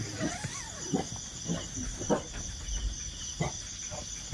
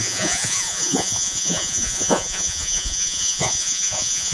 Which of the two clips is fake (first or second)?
second